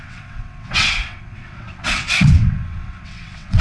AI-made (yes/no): yes